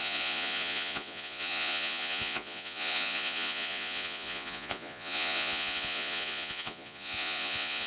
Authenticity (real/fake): fake